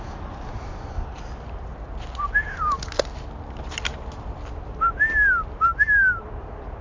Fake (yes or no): no